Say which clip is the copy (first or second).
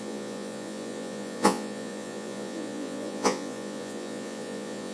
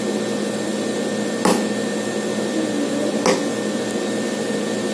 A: first